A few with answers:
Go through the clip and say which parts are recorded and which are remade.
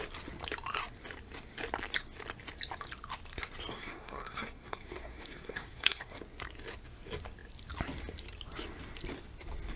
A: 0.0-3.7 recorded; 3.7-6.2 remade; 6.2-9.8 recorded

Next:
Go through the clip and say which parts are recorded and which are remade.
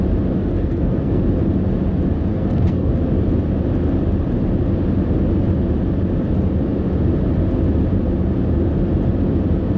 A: 0.0-0.4 recorded; 0.4-1.2 remade; 1.2-2.3 recorded; 2.3-2.9 remade; 2.9-9.8 recorded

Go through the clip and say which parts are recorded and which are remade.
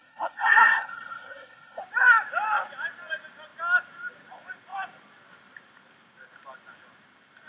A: 0.0-1.8 remade; 1.8-7.5 recorded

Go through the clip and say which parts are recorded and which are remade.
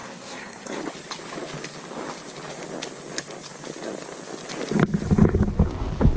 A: 0.0-0.8 remade; 0.8-6.2 recorded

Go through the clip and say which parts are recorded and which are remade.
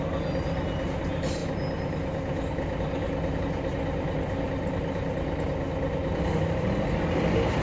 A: 0.0-7.6 recorded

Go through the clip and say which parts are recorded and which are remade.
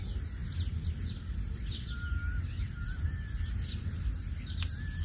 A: 0.0-5.0 recorded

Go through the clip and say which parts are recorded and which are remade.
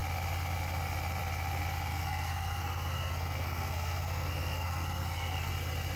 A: 0.0-1.9 recorded; 1.9-5.5 remade; 5.5-6.0 recorded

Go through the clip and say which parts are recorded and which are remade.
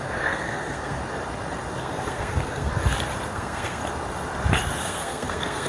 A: 0.0-1.0 remade; 1.0-1.8 recorded; 1.8-2.7 remade; 2.7-3.3 recorded; 3.3-3.8 remade; 3.8-4.8 recorded; 4.8-5.7 remade